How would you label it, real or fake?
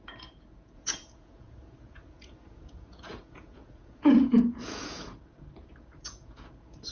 fake